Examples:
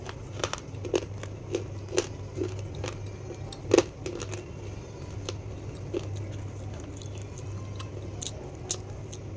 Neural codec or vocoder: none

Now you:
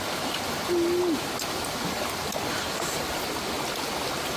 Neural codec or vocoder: none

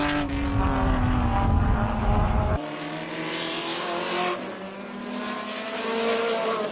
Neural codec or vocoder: none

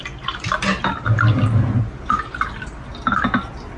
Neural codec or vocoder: none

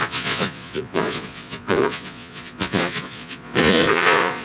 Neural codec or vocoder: vocoder, Vocos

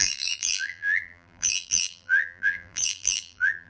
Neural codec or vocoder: vocoder, BigVGAN v2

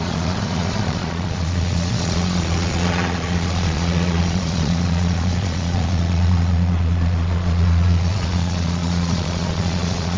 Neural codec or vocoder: vocoder, Vocos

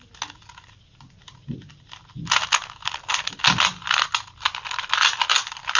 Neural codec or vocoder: none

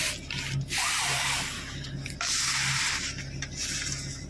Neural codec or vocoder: none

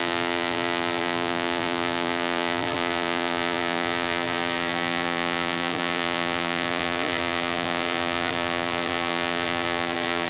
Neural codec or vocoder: vocoder, BigVGAN v2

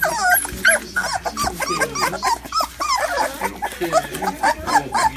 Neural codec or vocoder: none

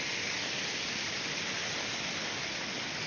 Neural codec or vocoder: none